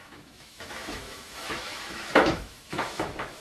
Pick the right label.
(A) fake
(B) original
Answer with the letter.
A